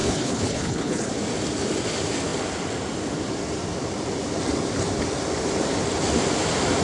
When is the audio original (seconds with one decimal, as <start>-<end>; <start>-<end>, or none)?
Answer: 1.1-6.8